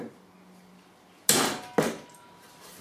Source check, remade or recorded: recorded